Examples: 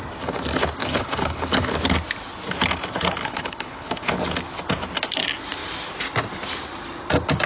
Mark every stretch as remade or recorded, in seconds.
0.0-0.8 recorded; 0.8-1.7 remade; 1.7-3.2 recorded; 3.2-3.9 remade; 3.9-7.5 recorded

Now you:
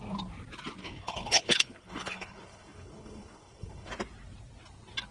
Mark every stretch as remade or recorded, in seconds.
0.0-0.8 recorded; 0.8-3.9 remade; 3.9-5.1 recorded